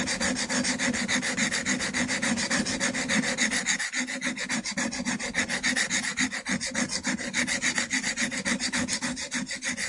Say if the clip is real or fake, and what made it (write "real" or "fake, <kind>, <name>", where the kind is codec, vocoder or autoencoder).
real